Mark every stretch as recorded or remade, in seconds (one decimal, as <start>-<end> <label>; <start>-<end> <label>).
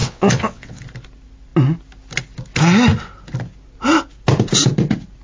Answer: 0.0-0.8 remade; 0.8-5.2 recorded